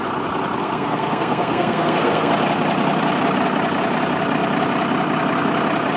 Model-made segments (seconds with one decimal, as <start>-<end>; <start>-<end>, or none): 0.6-2.3